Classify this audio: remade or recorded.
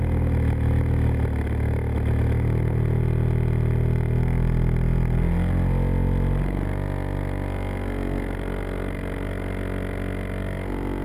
recorded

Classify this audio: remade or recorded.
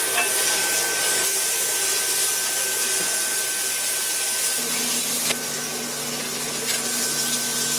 recorded